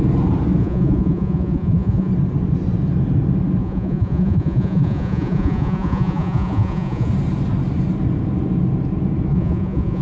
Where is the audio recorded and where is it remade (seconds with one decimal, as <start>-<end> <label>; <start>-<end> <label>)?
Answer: 0.0-0.6 recorded; 0.6-2.1 remade; 2.1-3.6 recorded; 3.6-7.1 remade; 7.1-9.3 recorded; 9.3-10.0 remade